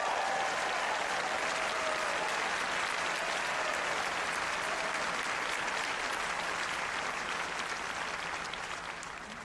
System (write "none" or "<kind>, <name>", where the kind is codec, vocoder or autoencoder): none